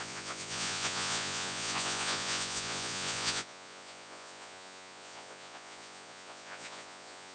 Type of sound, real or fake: fake